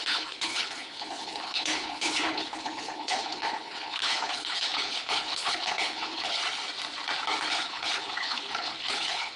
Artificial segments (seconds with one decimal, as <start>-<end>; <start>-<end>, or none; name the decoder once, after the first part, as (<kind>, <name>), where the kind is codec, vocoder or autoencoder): 0.0-6.4 (codec, HILCodec); 7.5-9.4